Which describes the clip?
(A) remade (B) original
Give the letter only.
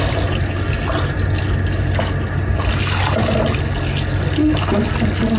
B